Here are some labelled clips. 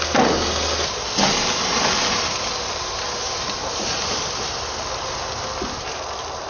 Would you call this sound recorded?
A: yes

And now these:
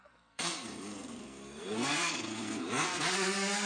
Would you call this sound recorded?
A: no